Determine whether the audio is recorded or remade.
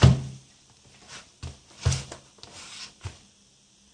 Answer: recorded